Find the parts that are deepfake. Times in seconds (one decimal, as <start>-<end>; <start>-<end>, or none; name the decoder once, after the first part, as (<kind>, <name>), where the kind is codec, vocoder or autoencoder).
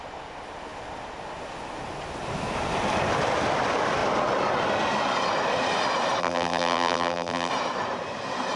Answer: 6.2-7.5 (vocoder, BigVGAN v2)